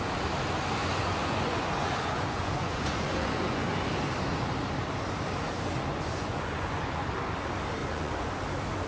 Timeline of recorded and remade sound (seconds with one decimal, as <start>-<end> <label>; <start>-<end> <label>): 0.0-0.8 recorded; 0.8-3.8 remade; 3.8-5.9 recorded; 5.9-7.1 remade; 7.1-7.8 recorded; 7.8-8.3 remade; 8.3-8.9 recorded